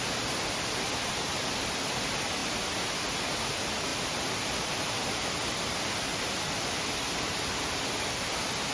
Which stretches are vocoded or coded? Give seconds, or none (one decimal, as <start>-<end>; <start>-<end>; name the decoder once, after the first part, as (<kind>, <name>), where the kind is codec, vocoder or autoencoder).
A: none